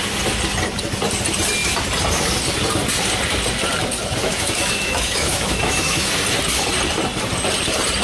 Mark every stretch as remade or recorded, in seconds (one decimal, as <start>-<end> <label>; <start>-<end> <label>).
0.0-4.2 recorded; 4.2-6.1 remade; 6.1-8.0 recorded